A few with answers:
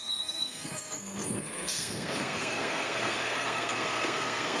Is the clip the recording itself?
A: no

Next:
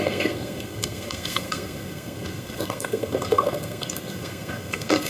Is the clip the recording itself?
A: no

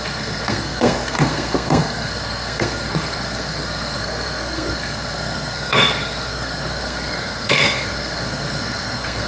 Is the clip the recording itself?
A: no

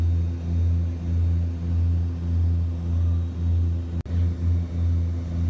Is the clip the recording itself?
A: yes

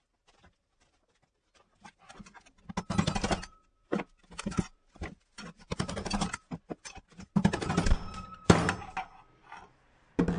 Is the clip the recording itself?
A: yes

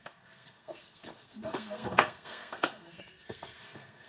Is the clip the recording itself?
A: no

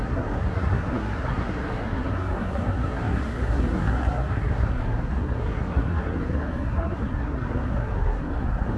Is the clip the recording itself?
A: no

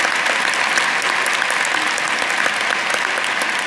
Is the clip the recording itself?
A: yes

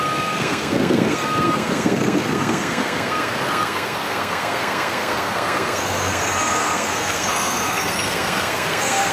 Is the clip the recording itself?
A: no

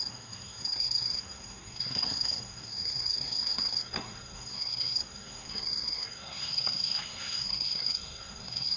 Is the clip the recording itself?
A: no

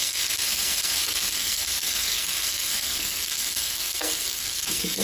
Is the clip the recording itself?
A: no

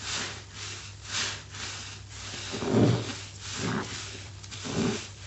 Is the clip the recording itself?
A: yes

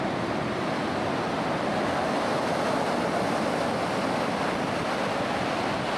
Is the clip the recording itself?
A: yes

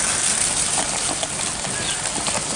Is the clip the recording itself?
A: yes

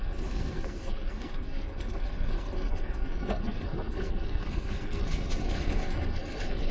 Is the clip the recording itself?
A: no